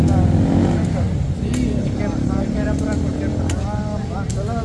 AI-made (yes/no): no